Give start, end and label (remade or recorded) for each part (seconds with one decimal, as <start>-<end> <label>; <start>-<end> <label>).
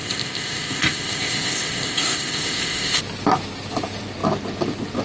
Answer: 0.0-3.0 remade; 3.0-5.0 recorded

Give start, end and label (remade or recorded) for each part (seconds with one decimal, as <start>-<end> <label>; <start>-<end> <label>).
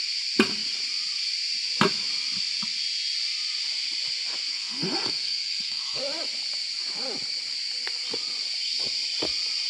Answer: 0.0-4.5 recorded; 4.5-6.0 remade; 6.0-9.7 recorded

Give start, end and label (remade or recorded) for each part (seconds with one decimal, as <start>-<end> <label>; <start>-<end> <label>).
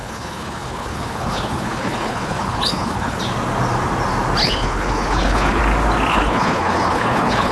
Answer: 0.0-3.2 remade; 3.2-4.4 recorded; 4.4-5.6 remade; 5.6-6.1 recorded; 6.1-7.5 remade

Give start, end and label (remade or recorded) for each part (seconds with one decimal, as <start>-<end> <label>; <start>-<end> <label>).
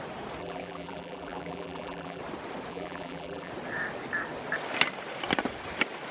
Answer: 0.0-0.4 recorded; 0.4-2.2 remade; 2.2-2.7 recorded; 2.7-3.5 remade; 3.5-6.1 recorded